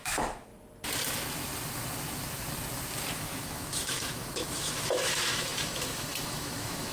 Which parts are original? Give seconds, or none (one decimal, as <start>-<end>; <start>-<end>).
0.5-3.1